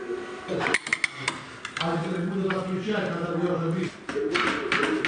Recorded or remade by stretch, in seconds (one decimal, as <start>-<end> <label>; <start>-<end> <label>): 0.0-5.1 recorded